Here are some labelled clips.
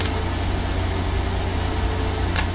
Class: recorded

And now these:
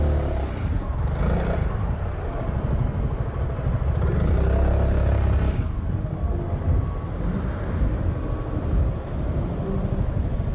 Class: recorded